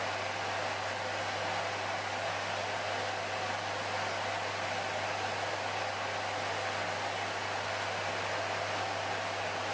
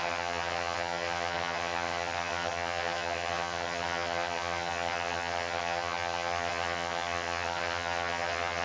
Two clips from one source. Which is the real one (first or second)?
first